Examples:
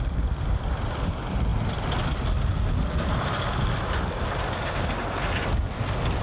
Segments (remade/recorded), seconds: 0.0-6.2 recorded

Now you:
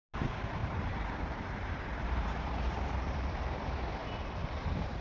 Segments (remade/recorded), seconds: 0.0-0.6 recorded; 0.6-3.6 remade; 3.6-4.0 recorded; 4.0-5.0 remade

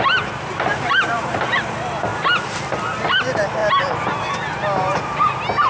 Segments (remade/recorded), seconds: 0.0-2.1 remade; 2.1-3.0 recorded; 3.0-3.6 remade; 3.6-5.0 recorded; 5.0-5.7 remade

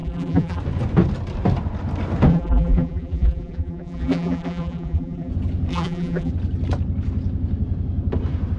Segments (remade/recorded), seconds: 0.0-0.6 remade; 0.6-2.3 recorded; 2.3-5.3 remade; 5.3-5.7 recorded; 5.7-6.3 remade; 6.3-8.6 recorded

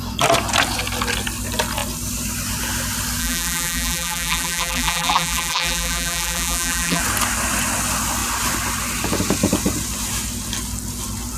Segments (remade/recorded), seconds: 0.0-3.2 recorded; 3.2-7.0 remade; 7.0-11.4 recorded